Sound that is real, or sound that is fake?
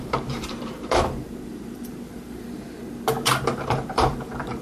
fake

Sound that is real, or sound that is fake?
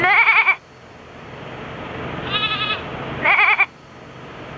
real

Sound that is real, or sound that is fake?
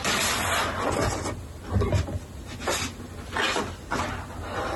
real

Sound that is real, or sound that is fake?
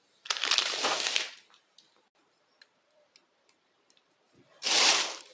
fake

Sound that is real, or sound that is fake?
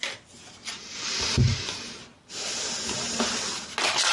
real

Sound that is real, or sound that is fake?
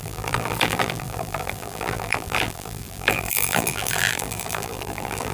fake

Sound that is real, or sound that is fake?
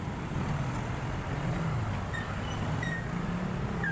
real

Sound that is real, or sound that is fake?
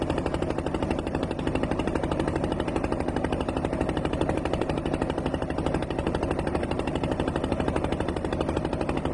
fake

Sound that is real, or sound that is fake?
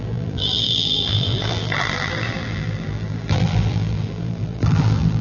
fake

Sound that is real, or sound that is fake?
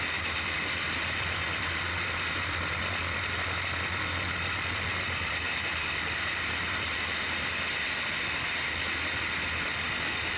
fake